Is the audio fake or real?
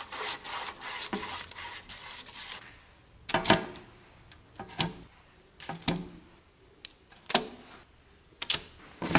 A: real